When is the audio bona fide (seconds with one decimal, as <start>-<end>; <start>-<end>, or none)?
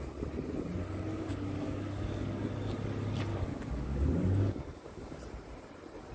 0.0-1.1; 2.5-3.3; 5.2-6.1